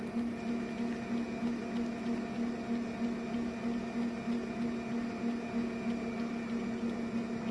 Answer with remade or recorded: recorded